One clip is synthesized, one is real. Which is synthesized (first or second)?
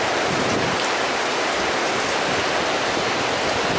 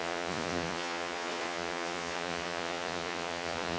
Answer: second